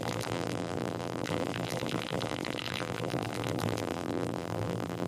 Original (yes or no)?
no